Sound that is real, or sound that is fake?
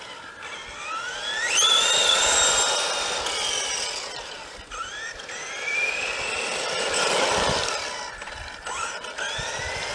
real